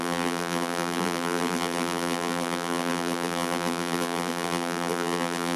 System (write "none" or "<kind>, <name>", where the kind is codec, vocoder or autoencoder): vocoder, BigVGAN v2